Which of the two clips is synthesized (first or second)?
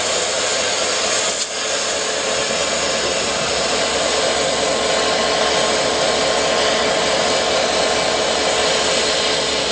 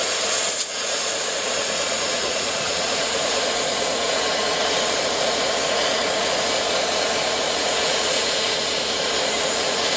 second